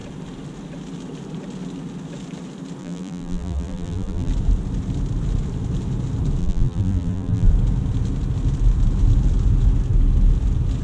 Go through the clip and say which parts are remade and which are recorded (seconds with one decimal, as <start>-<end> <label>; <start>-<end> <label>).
0.0-2.8 recorded; 2.8-4.3 remade; 4.3-6.4 recorded; 6.4-7.5 remade; 7.5-10.8 recorded

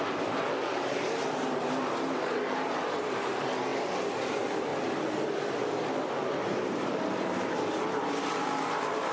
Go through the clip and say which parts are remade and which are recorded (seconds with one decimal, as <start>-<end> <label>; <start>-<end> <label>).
0.0-3.7 remade; 3.7-4.3 recorded; 4.3-4.7 remade; 4.7-6.4 recorded; 6.4-9.1 remade

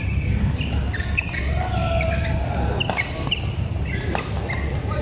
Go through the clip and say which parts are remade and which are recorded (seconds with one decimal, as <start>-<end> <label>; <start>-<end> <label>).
0.0-5.0 recorded

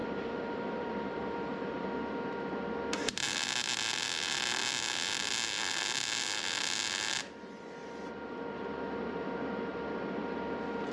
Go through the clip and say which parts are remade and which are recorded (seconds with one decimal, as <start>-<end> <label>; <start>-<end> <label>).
0.0-1.9 remade; 1.9-10.9 recorded

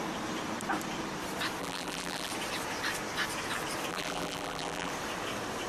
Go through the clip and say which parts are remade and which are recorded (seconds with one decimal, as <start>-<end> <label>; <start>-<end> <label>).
0.0-1.6 recorded; 1.6-2.3 remade; 2.3-3.9 recorded; 3.9-4.9 remade; 4.9-5.7 recorded

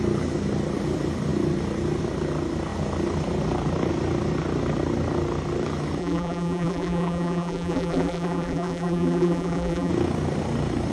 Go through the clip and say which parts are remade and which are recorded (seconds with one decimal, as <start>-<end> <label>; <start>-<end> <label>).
0.0-6.0 recorded; 6.0-9.9 remade; 9.9-10.9 recorded

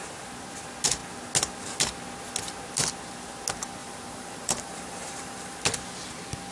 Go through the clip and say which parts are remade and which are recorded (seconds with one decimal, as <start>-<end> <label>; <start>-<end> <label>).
0.0-3.8 recorded; 3.8-5.6 remade; 5.6-6.5 recorded